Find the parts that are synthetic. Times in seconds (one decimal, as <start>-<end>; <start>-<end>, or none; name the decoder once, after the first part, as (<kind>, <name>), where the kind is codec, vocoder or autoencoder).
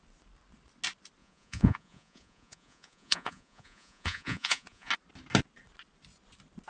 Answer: 1.2-4.9 (vocoder, Vocos)